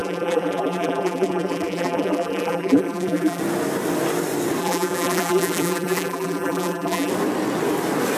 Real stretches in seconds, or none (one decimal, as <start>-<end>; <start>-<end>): 3.4-4.6; 7.1-8.2